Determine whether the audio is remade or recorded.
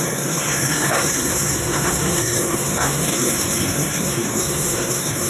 remade